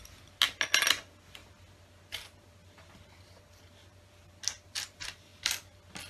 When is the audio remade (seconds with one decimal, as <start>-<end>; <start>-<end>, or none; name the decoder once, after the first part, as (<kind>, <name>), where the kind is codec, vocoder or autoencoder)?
none